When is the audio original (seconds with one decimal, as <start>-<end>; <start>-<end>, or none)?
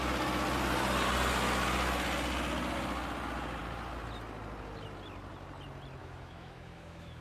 0.0-6.0